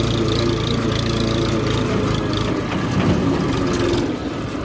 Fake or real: real